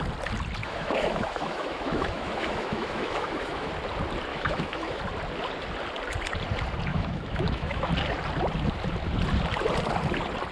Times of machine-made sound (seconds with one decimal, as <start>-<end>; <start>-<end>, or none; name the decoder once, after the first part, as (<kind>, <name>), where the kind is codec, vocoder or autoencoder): 0.6-3.7 (autoencoder, DAC-VAE); 4.3-5.0; 6.9-7.9